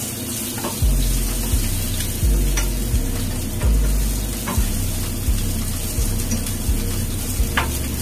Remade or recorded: recorded